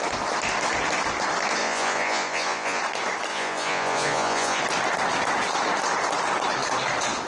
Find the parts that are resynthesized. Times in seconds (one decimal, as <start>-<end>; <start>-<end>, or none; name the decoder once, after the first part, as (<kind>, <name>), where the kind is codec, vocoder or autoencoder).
1.6-2.8 (vocoder, Vocos); 3.3-4.6